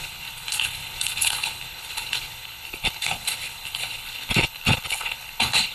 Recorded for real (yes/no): no